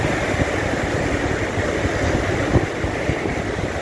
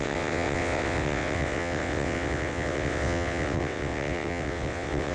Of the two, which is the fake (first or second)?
second